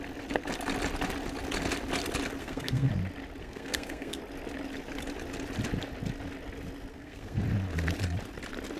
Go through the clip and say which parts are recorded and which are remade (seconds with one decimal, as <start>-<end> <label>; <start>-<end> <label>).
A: 0.0-2.4 recorded; 2.4-2.9 remade; 2.9-3.4 recorded; 3.4-4.2 remade; 4.2-6.9 recorded; 6.9-7.4 remade; 7.4-8.8 recorded